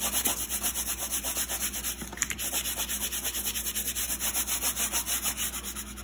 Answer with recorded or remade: recorded